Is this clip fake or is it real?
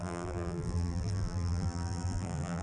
fake